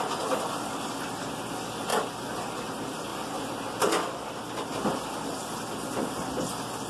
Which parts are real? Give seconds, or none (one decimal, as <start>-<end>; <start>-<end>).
0.0-1.9; 2.4-3.1; 5.0-6.9